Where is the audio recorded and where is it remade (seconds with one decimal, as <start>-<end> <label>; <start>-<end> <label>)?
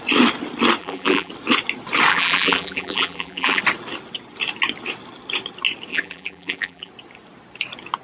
0.0-0.8 recorded; 0.8-1.3 remade; 1.3-2.1 recorded; 2.1-3.6 remade; 3.6-5.9 recorded; 5.9-6.9 remade; 6.9-8.0 recorded